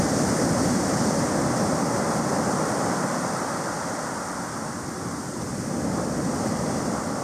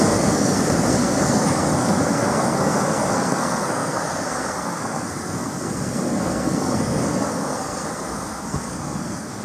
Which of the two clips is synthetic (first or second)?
second